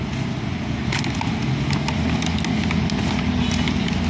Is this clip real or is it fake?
real